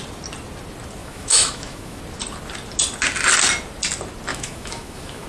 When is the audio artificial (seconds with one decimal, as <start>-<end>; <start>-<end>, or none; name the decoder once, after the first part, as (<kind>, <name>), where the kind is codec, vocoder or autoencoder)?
1.0-2.0 (autoencoder, DAC-VAE); 4.3-5.3